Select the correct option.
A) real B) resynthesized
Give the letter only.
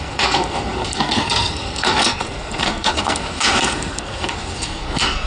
B